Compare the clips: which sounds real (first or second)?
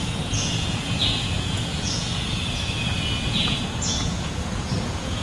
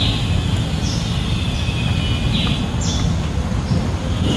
second